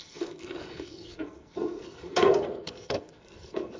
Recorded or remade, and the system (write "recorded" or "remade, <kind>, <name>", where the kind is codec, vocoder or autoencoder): remade, codec, SNAC